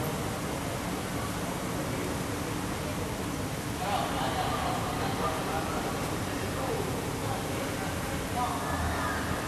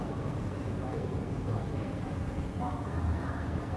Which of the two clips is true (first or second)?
first